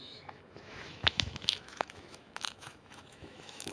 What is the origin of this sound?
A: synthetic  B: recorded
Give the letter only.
A